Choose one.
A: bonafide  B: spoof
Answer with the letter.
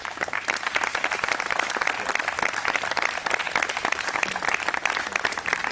A